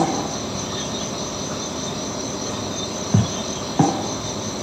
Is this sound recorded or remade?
remade